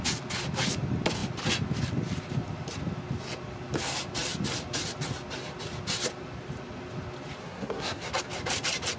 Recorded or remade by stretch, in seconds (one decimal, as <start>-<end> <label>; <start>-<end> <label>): 0.0-7.4 recorded; 7.4-8.1 remade; 8.1-9.0 recorded